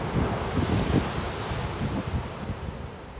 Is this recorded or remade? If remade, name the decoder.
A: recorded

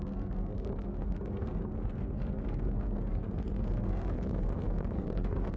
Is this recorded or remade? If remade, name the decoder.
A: remade, codec, SNAC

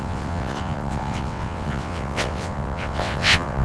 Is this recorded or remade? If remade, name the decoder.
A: remade, vocoder, WaveNeXt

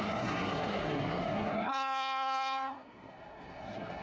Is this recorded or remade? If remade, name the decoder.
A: remade, codec, SNAC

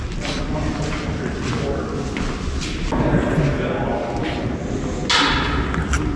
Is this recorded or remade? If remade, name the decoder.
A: recorded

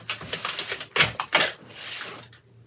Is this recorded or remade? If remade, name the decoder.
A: recorded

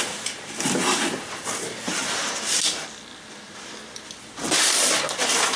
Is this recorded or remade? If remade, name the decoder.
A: recorded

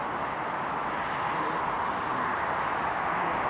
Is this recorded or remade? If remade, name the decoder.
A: recorded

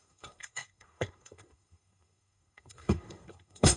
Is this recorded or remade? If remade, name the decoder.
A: remade, codec, SNAC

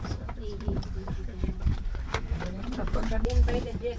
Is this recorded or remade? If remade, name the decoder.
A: remade, vocoder, BigVGAN v2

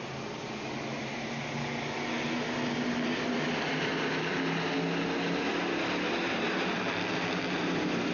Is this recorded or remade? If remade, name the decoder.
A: recorded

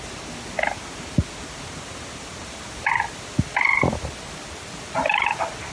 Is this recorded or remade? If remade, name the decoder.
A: recorded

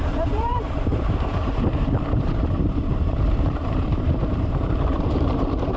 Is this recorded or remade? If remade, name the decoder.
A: remade, vocoder, BigVGAN v2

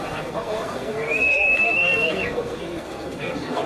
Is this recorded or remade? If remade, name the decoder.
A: remade, codec, SNAC